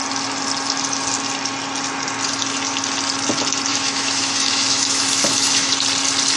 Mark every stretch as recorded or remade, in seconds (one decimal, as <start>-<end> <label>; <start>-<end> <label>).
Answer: 0.0-3.7 recorded; 3.7-5.7 remade; 5.7-6.4 recorded